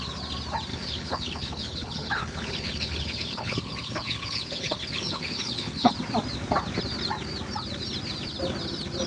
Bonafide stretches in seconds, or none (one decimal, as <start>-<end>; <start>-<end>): 0.0-0.7; 5.9-9.1